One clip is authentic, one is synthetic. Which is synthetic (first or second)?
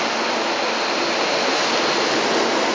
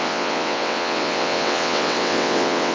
second